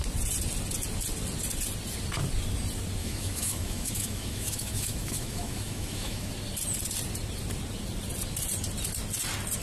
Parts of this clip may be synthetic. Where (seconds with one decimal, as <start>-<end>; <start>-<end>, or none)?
3.0-6.3